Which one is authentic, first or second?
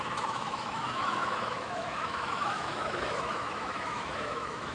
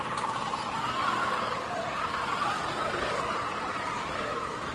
second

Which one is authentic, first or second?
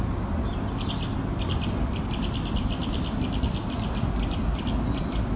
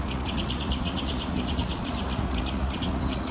first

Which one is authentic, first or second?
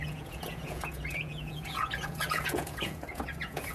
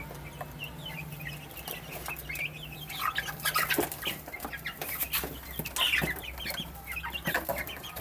second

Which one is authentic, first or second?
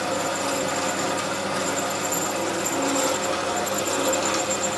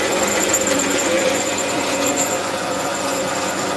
first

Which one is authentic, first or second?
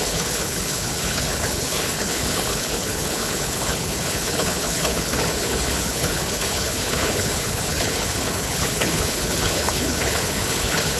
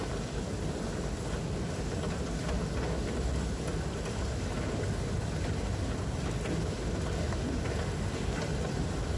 second